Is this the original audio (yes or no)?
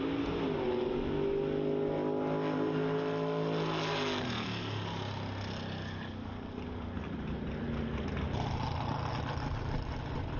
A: yes